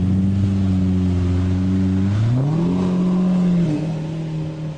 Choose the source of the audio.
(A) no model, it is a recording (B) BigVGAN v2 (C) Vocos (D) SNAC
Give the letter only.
A